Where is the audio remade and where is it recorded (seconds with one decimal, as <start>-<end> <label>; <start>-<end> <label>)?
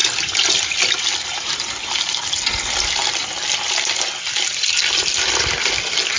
0.0-6.2 recorded